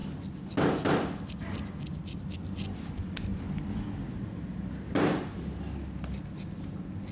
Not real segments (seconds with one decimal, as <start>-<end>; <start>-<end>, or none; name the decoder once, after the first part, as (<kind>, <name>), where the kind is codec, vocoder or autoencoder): none